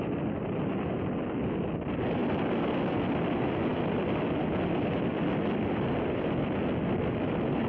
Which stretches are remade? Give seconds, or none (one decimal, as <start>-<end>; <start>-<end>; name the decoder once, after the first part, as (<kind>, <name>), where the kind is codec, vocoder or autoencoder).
none